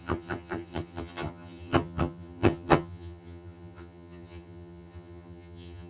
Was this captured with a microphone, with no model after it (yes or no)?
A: no